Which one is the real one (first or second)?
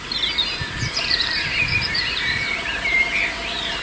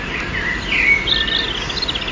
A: second